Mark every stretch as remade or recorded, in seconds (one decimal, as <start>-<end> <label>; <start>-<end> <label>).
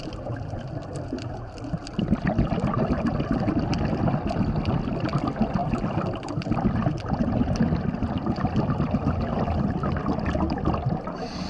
0.0-11.5 recorded